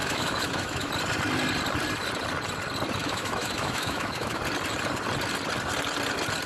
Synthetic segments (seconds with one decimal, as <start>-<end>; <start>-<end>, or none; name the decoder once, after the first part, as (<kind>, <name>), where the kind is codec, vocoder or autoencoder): 0.0-0.9 (autoencoder, DAC-VAE); 3.0-4.4